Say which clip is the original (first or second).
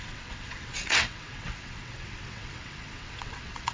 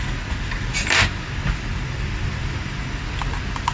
second